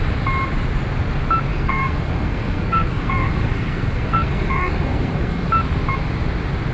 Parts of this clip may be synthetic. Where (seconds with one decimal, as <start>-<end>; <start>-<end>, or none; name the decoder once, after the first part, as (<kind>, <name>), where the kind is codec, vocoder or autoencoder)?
1.5-5.5 (codec, SNAC)